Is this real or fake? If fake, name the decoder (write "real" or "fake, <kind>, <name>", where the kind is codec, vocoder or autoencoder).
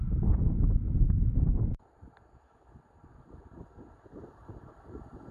real